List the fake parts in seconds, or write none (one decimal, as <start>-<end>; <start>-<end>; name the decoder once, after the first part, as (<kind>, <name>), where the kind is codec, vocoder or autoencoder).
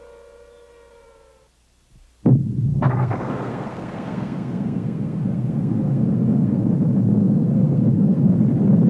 2.7-6.7 (codec, SNAC); 7.2-8.3